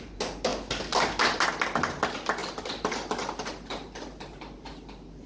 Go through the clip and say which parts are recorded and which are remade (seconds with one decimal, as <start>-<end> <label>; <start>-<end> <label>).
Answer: 0.0-5.3 recorded